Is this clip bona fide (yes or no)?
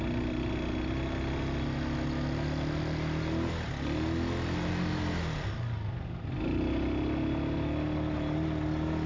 yes